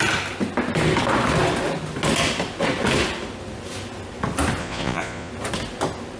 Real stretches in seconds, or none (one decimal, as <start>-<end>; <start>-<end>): 0.0-4.6; 5.3-6.2

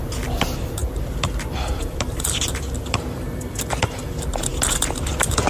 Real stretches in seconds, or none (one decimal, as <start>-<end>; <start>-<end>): 0.0-0.8; 4.1-5.5

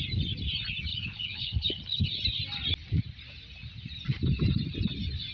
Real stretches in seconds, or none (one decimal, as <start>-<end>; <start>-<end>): 0.0-0.9; 2.1-5.3

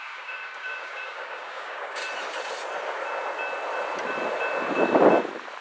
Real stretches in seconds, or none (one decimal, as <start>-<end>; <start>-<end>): 2.0-5.6

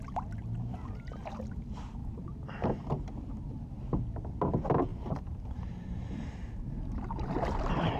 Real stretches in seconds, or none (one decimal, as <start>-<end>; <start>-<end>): 0.0-0.4; 1.4-2.0; 3.8-4.9

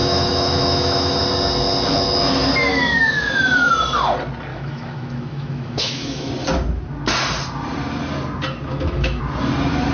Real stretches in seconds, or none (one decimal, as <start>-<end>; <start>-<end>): 1.2-2.7; 3.7-4.5; 6.3-8.7; 9.2-9.9

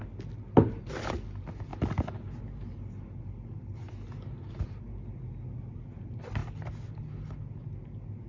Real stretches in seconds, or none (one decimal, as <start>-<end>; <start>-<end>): 0.0-8.3